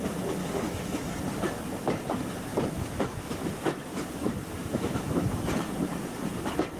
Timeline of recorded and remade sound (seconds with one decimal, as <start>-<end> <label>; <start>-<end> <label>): 0.0-0.4 recorded; 0.4-1.1 remade; 1.1-2.5 recorded; 2.5-4.1 remade; 4.1-4.6 recorded; 4.6-5.3 remade; 5.3-6.8 recorded